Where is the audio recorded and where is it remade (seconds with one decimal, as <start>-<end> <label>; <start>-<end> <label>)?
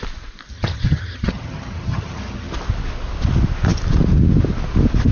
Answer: 0.0-0.5 recorded; 0.5-2.5 remade; 2.5-5.1 recorded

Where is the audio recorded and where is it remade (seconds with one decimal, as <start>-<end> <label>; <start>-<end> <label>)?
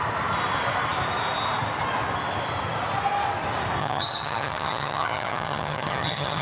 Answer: 0.0-3.8 recorded; 3.8-6.4 remade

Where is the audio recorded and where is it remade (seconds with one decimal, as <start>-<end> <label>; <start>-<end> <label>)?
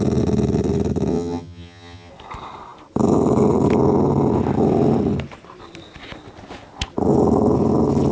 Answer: 0.0-1.1 recorded; 1.1-2.1 remade; 2.1-8.1 recorded